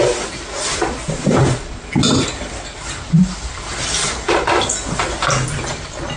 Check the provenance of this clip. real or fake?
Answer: real